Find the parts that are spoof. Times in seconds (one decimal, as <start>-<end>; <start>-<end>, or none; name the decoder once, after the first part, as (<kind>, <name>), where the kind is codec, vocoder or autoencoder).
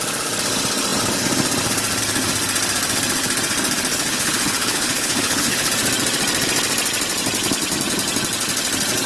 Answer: 3.9-5.7 (codec, HILCodec)